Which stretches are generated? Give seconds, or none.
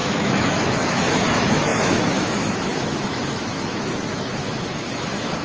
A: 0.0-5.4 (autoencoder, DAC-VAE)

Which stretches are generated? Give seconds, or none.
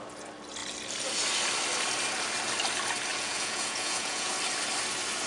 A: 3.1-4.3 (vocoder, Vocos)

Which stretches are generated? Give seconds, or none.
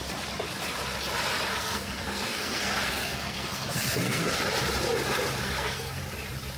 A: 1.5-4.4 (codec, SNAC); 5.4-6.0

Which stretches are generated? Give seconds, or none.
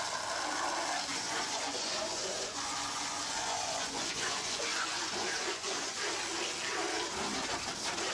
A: 1.1-6.0 (vocoder, Vocos)